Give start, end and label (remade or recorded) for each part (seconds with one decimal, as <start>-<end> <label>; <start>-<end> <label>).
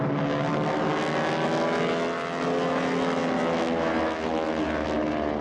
0.0-5.4 recorded